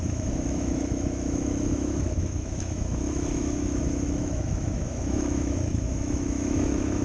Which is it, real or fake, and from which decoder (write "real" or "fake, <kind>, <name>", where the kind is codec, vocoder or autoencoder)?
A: fake, autoencoder, DAC-VAE